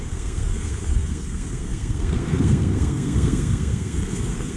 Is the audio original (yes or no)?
no